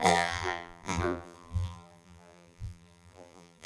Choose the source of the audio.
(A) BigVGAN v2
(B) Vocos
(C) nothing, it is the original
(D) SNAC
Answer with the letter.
A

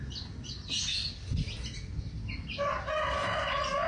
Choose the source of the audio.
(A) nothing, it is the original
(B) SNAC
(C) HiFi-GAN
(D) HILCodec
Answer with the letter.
A